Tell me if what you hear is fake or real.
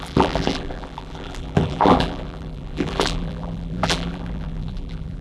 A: fake